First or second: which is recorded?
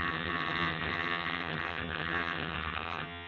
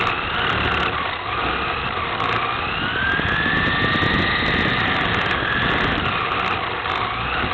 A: second